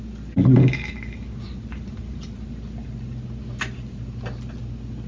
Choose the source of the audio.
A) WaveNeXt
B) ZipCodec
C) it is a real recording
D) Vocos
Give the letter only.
C